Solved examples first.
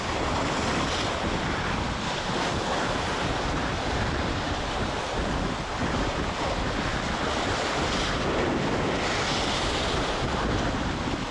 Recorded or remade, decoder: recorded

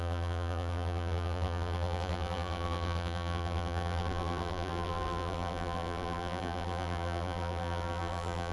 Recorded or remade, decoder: remade, vocoder, BigVGAN v2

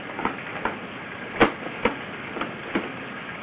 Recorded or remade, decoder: remade, vocoder, BigVGAN v2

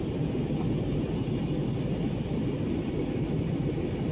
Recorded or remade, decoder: remade, vocoder, BigVGAN v2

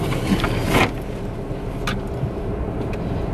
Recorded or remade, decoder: remade, vocoder, BigVGAN v2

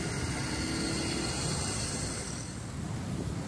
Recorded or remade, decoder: recorded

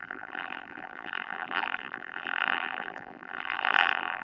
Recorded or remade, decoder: remade, vocoder, BigVGAN v2